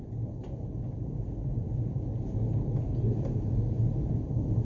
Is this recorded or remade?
recorded